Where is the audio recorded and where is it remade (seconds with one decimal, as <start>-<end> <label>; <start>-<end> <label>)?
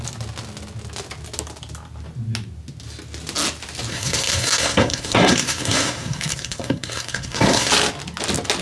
0.0-3.9 recorded; 3.9-7.7 remade; 7.7-8.6 recorded